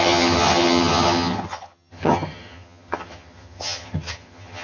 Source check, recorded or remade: remade